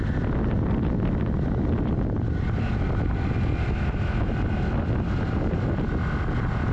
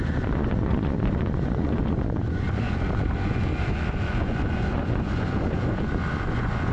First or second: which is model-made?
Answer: second